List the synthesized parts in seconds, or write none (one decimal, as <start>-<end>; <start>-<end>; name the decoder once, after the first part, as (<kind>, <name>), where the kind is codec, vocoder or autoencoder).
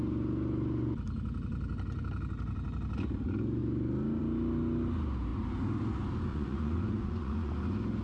6.3-7.5 (vocoder, Vocos)